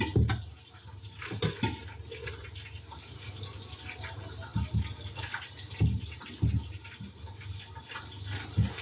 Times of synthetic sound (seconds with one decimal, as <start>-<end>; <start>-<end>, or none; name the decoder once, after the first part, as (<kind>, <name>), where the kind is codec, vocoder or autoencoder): none

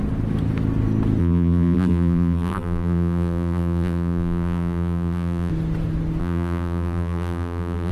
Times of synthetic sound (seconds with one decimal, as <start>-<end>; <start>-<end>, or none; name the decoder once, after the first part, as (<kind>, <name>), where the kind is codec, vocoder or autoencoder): 1.2-5.5 (vocoder, BigVGAN v2); 6.2-7.9

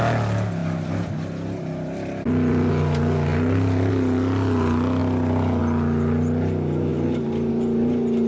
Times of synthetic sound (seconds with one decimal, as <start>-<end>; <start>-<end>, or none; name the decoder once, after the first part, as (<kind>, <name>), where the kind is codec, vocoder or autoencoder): 0.6-2.7 (vocoder, BigVGAN v2); 3.3-3.9; 5.0-5.6

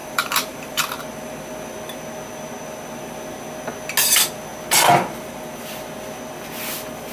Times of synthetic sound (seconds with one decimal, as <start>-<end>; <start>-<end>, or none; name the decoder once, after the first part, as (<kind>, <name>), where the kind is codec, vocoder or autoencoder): 0.0-1.0 (vocoder, BigVGAN v2)

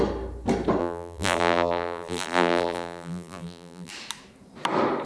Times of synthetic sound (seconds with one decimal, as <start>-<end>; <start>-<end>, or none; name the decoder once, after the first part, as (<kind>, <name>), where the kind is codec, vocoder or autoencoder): 0.8-3.9 (vocoder, BigVGAN v2)

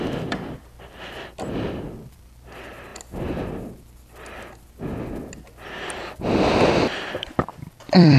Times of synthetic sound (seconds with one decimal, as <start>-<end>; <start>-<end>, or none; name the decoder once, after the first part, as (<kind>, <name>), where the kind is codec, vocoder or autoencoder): 0.0-2.9 (vocoder, BigVGAN v2); 6.7-8.2

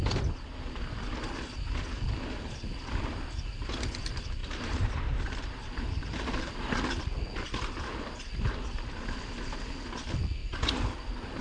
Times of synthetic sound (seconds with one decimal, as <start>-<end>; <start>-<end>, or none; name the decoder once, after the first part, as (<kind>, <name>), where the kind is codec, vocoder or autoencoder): 4.4-6.6 (vocoder, BigVGAN v2)

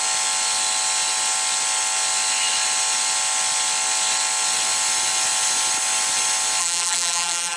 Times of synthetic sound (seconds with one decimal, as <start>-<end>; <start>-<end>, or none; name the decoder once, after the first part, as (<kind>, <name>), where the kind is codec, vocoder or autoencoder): 6.6-7.6 (vocoder, BigVGAN v2)